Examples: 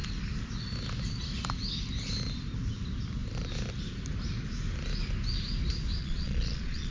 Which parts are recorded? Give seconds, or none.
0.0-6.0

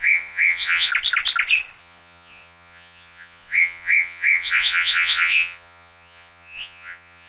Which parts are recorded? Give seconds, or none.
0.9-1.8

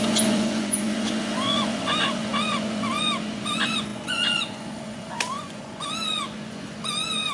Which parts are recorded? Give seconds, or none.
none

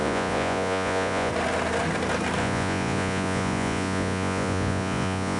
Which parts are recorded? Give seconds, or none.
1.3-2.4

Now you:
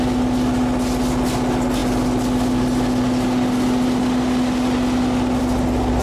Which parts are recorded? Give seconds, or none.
0.0-6.0

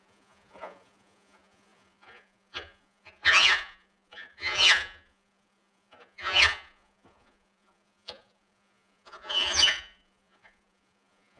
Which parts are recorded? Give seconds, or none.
none

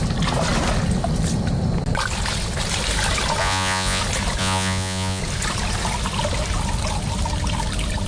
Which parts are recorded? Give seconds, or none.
0.0-3.4; 4.0-4.4; 5.2-8.1